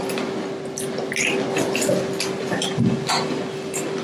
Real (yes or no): yes